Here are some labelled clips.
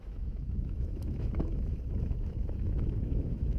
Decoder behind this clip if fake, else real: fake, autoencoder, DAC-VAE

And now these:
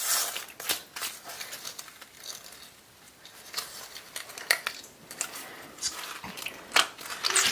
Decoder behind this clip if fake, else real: real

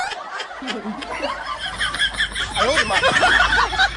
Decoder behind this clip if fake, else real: real